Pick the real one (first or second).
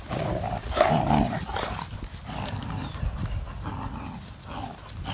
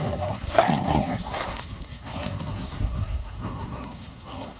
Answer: first